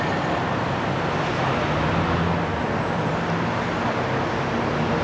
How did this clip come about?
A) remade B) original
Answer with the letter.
B